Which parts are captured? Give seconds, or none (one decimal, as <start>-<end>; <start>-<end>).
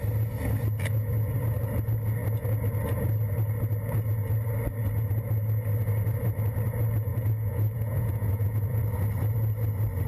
0.0-7.1; 8.8-10.1